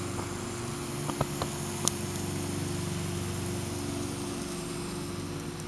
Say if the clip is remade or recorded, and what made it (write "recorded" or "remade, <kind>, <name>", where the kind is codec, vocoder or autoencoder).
recorded